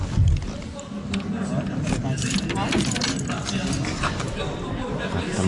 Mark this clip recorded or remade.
recorded